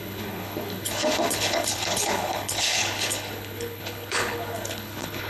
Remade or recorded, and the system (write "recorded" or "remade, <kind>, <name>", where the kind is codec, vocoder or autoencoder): remade, codec, HILCodec